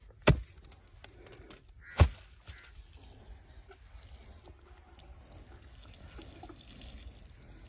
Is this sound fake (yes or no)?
no